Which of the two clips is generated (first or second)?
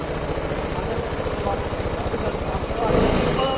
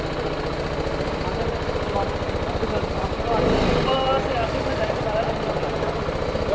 first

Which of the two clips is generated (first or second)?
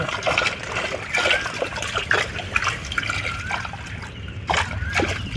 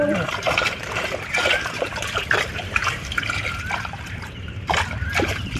second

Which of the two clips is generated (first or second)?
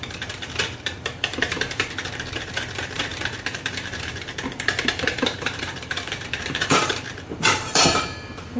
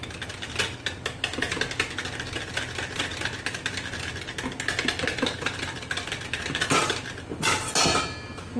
first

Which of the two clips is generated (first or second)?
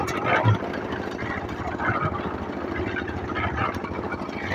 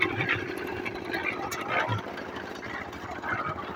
first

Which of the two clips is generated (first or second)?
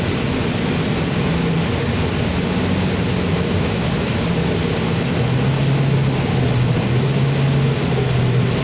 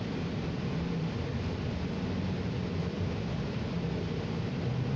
second